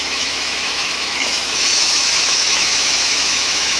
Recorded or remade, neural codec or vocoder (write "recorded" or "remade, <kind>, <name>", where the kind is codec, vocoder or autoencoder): remade, autoencoder, DAC-VAE